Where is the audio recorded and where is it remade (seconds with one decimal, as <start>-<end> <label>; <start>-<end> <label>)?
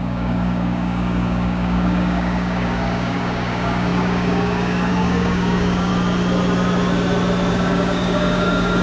0.0-5.9 remade; 5.9-7.5 recorded; 7.5-8.8 remade